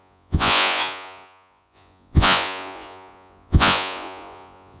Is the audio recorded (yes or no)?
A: no